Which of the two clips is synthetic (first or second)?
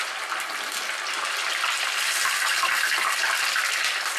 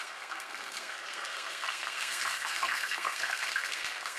second